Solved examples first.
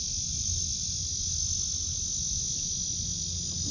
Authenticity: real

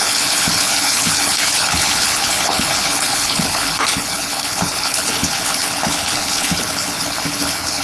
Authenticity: fake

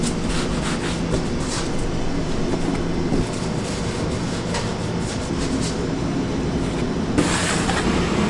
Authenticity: real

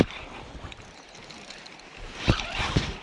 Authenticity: real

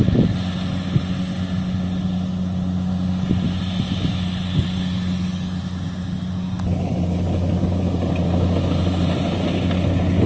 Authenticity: real